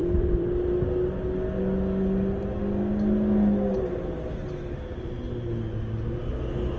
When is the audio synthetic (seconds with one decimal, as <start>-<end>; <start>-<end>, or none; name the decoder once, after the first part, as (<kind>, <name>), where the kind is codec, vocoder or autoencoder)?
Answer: 0.0-0.6 (vocoder, BigVGAN v2)